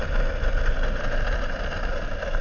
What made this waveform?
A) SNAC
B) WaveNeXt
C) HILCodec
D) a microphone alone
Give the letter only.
D